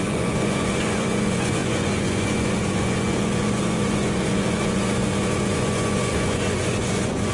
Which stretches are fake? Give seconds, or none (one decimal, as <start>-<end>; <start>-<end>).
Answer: 0.0-7.3